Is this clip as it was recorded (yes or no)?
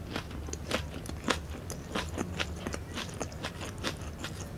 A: yes